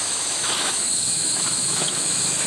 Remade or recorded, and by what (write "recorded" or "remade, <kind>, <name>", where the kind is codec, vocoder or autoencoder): remade, autoencoder, DAC-VAE